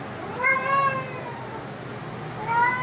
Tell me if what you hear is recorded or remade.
recorded